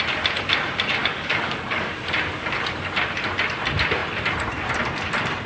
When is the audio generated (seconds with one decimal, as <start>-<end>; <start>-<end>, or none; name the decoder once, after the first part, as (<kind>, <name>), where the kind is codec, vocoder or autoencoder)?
1.0-1.9 (codec, DAC)

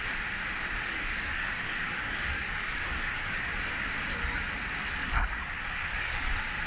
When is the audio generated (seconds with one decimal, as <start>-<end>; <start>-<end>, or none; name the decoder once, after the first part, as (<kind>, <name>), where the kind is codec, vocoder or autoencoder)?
0.9-3.5 (codec, DAC); 5.0-6.3

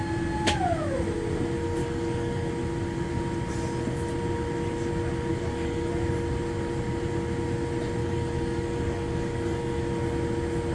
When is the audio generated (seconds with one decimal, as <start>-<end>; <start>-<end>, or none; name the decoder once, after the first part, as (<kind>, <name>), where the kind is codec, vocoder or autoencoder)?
1.8-2.5 (codec, DAC); 5.3-5.9; 8.0-9.8

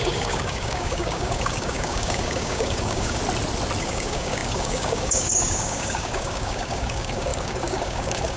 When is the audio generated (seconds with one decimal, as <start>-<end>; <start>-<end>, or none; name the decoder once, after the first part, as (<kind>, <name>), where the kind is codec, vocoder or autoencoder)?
0.0-3.2 (codec, DAC); 3.8-8.4

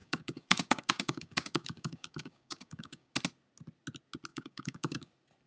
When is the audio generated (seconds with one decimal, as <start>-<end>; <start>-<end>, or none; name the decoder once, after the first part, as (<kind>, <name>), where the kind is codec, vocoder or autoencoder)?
0.0-3.1 (codec, DAC); 4.3-5.1

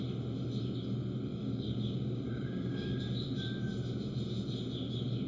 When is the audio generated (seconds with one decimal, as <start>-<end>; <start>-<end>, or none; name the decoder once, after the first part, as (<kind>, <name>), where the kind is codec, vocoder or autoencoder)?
1.3-3.0 (codec, DAC)